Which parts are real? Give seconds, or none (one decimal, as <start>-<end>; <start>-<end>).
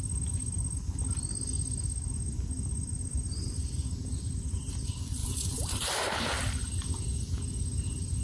0.0-5.2; 6.3-8.2